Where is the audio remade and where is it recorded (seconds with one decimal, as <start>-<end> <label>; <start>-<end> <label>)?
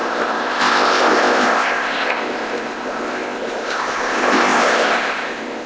0.0-5.7 remade